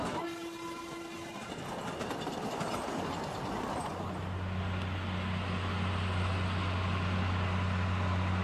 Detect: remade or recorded recorded